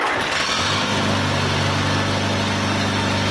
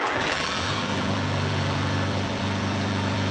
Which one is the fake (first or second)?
second